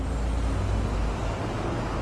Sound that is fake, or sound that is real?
real